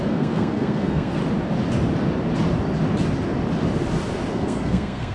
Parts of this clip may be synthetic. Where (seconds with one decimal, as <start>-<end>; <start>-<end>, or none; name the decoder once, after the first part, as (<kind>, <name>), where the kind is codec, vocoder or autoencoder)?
0.0-1.2 (codec, SNAC); 4.3-5.1